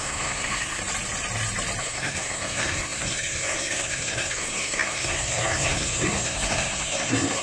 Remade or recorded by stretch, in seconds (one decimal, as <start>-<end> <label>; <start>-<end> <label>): 0.0-0.8 remade; 0.8-1.8 recorded; 1.8-7.4 remade